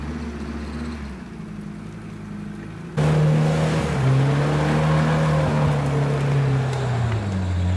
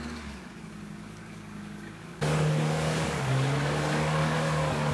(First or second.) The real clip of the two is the first